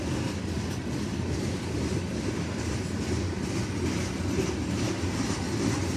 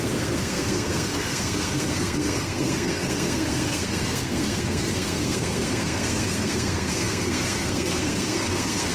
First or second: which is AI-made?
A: second